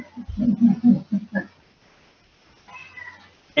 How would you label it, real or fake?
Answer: real